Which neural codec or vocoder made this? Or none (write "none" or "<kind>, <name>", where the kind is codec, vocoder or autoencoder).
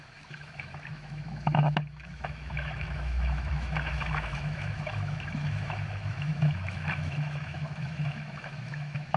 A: autoencoder, DAC-VAE